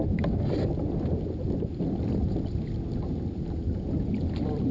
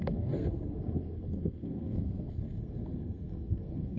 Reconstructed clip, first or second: second